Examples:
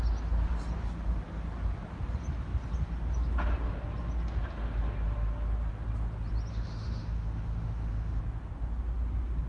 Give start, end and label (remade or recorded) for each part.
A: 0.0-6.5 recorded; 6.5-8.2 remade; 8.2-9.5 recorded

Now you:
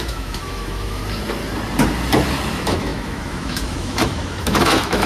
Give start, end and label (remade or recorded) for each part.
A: 0.0-1.0 remade; 1.0-2.5 recorded; 2.5-5.1 remade

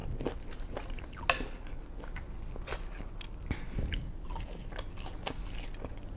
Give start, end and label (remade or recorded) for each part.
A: 0.0-6.2 recorded

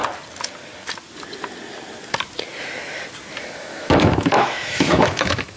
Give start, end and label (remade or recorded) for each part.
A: 0.0-3.4 recorded; 3.4-5.6 remade

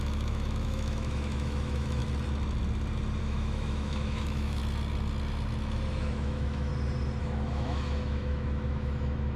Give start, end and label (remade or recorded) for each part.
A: 0.0-2.0 remade; 2.0-3.2 recorded; 3.2-4.6 remade; 4.6-5.9 recorded; 5.9-6.7 remade; 6.7-7.2 recorded; 7.2-9.4 remade

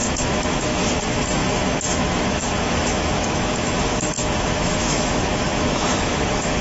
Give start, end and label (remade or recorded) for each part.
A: 0.0-6.6 remade

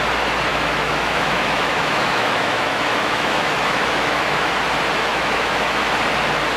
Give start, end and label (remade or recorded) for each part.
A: 0.0-0.5 recorded; 0.5-4.5 remade; 4.5-5.1 recorded; 5.1-5.9 remade; 5.9-6.6 recorded

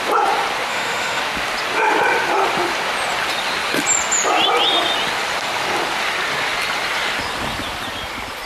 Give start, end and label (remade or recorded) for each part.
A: 0.0-0.7 recorded; 0.7-1.2 remade; 1.2-8.5 recorded